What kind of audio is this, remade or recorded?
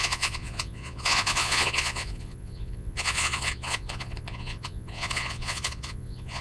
remade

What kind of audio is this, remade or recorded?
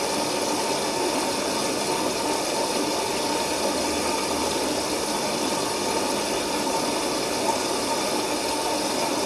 recorded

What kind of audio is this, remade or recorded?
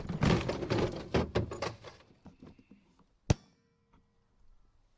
recorded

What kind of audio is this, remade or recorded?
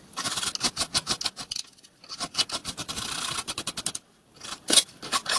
recorded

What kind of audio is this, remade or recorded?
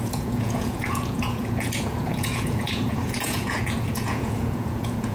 remade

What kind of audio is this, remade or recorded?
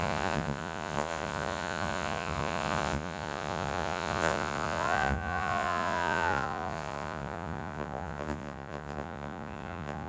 remade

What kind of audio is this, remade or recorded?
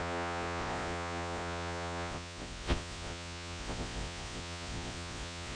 remade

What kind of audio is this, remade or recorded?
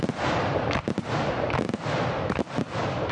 recorded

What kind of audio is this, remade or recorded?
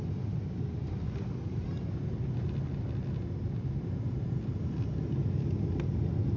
recorded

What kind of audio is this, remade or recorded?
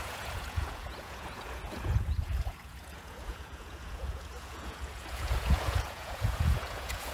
remade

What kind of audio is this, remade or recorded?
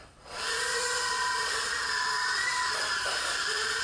remade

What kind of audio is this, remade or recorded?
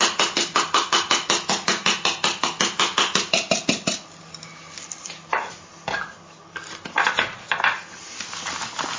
recorded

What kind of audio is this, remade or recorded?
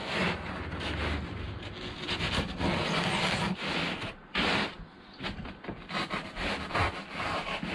recorded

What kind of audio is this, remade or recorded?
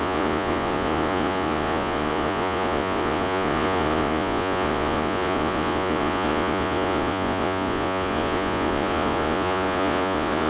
remade